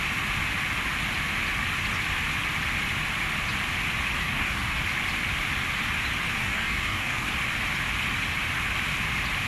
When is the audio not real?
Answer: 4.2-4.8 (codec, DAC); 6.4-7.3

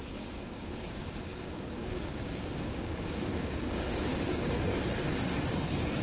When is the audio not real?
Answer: 0.0-4.7 (codec, DAC); 5.5-6.0

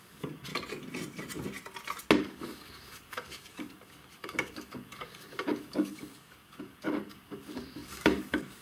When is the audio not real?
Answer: 0.0-0.5 (codec, DAC); 2.2-8.6